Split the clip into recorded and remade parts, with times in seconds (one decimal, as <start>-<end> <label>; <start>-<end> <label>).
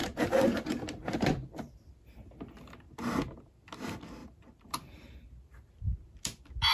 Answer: 0.0-2.1 remade; 2.1-4.2 recorded; 4.2-5.7 remade; 5.7-6.7 recorded